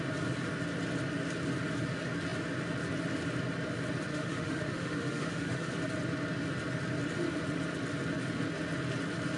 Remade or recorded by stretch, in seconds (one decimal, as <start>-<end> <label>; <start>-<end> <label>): 0.0-4.1 recorded; 4.1-5.7 remade; 5.7-9.4 recorded